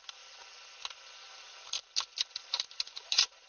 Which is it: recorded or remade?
recorded